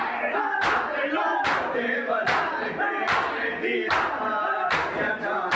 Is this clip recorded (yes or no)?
yes